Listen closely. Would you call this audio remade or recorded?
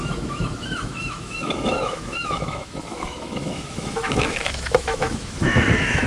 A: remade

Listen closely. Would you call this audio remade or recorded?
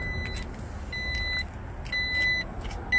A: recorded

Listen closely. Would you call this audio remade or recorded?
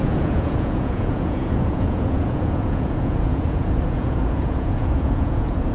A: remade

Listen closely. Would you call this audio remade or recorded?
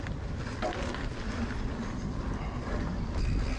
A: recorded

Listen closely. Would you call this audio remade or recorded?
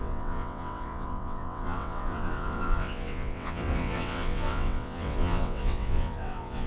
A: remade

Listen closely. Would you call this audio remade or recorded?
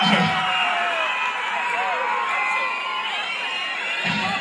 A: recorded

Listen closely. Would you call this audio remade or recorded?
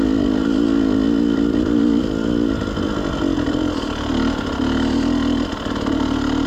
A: recorded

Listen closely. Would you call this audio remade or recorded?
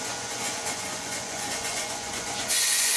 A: remade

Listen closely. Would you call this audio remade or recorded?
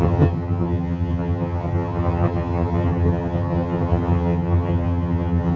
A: remade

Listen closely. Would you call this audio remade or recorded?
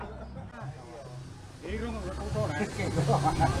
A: recorded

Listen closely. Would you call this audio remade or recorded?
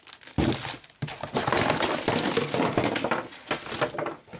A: recorded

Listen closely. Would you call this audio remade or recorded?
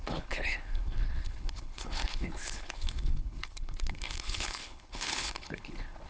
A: remade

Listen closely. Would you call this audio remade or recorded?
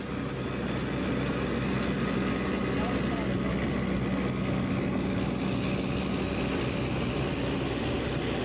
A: recorded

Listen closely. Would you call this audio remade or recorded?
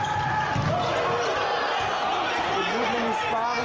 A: recorded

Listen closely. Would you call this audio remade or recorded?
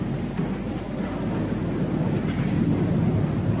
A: recorded